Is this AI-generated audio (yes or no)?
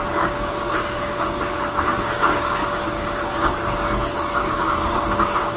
yes